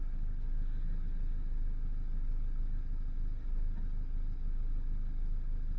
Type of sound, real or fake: real